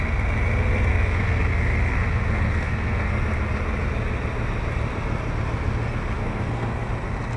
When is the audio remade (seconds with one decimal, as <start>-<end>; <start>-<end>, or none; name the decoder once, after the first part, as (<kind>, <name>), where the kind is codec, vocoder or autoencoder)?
0.9-3.1 (codec, SNAC); 6.2-6.9

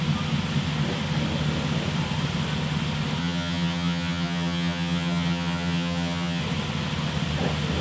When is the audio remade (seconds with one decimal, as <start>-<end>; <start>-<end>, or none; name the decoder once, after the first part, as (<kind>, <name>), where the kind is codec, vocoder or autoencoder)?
3.2-6.4 (vocoder, HiFi-GAN)

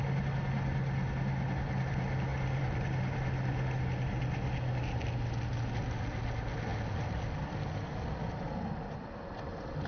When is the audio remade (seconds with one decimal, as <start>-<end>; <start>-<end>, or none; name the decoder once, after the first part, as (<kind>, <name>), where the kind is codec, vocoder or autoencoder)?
none

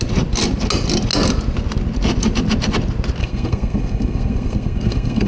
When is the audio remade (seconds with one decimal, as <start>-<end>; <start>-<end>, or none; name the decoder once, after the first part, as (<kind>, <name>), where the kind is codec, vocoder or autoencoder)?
3.2-5.3 (codec, SNAC)

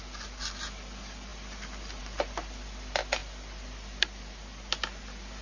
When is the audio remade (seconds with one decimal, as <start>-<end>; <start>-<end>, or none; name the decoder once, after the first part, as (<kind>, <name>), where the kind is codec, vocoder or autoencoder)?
none